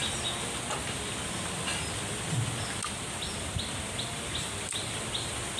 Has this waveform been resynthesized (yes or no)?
no